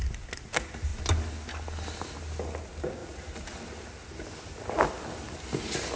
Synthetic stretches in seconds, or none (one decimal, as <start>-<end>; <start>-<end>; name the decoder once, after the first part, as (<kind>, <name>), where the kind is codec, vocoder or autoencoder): none